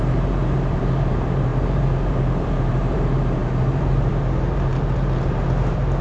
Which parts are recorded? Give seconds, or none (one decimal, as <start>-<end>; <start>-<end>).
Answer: none